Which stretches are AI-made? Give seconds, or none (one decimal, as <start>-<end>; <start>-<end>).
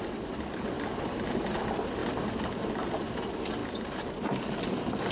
none